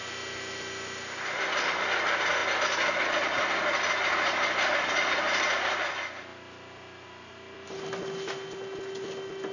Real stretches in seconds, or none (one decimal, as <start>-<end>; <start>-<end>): 0.0-9.5